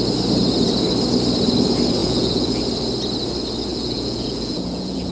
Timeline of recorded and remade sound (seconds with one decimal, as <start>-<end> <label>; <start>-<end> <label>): 0.0-2.0 recorded; 2.0-2.6 remade; 2.6-3.7 recorded; 3.7-5.1 remade